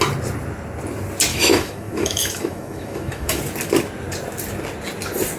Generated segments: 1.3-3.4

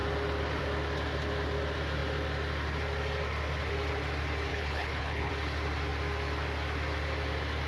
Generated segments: 4.5-5.3

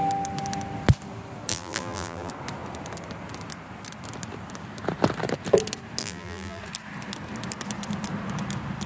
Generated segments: 1.5-2.3; 6.0-6.6